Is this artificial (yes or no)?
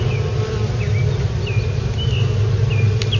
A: no